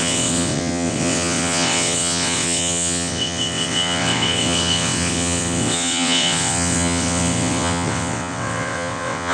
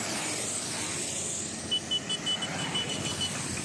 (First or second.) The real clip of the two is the second